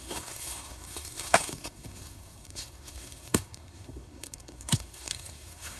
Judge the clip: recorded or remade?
remade